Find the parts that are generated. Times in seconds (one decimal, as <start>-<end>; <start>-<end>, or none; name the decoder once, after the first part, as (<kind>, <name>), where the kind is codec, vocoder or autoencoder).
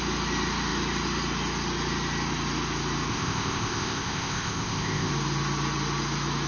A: 3.1-5.1 (codec, ZipCodec)